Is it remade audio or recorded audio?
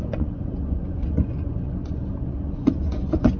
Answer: remade